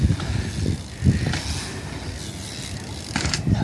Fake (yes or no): no